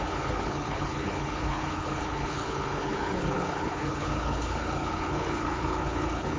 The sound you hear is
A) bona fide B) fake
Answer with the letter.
B